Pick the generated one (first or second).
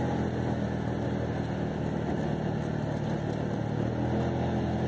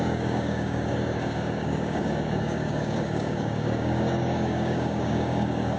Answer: second